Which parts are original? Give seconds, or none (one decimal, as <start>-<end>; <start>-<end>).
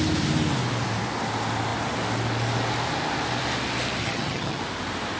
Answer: 0.0-4.0; 4.6-5.2